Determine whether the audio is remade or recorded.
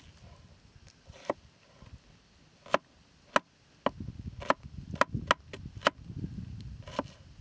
recorded